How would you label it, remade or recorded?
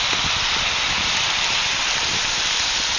recorded